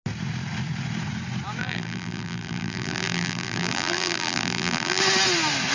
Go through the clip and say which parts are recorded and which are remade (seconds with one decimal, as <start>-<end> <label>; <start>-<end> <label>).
0.0-1.6 recorded; 1.6-5.0 remade; 5.0-5.7 recorded